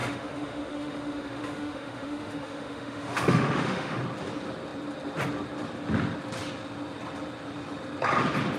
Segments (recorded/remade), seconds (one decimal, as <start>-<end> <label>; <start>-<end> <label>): 0.0-4.0 remade; 4.0-8.6 recorded